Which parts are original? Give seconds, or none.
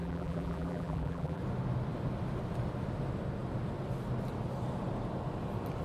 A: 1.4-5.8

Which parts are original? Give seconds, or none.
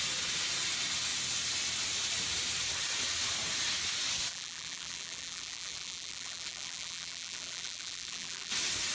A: 0.0-4.3; 8.5-8.9